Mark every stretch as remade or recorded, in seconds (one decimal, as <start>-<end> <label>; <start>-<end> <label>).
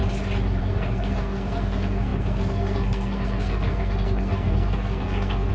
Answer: 0.0-0.6 recorded; 0.6-5.5 remade